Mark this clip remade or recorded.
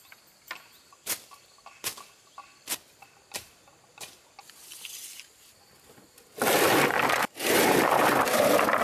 recorded